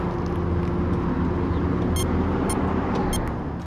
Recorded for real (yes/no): yes